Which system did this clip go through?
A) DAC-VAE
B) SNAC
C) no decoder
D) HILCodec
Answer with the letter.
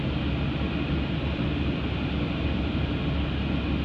C